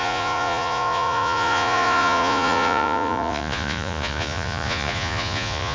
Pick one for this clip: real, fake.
fake